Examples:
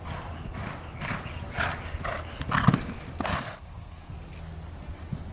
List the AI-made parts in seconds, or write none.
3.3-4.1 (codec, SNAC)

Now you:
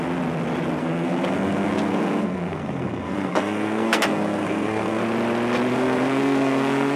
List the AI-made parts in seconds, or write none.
0.8-5.0 (codec, SNAC); 5.7-7.0

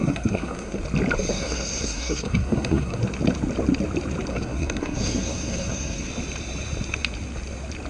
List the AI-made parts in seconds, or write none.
0.0-0.8 (codec, SNAC); 1.3-3.0; 4.3-6.1